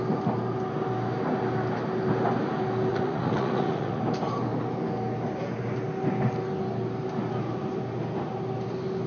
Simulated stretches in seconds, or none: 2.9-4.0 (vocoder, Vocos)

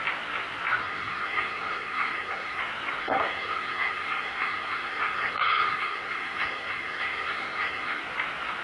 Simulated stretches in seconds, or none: 0.8-2.6 (codec, SNAC); 3.0-8.0

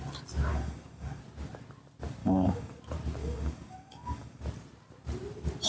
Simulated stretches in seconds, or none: 0.5-1.2 (codec, DAC); 2.2-2.8; 3.2-4.4

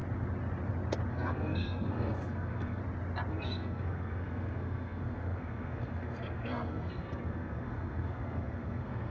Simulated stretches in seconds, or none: 1.1-2.8 (codec, SNAC); 3.3-9.1

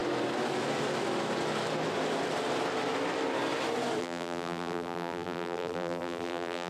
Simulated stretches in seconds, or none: 4.0-6.7 (vocoder, BigVGAN v2)